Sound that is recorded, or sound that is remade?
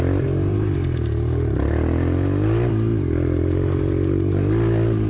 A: recorded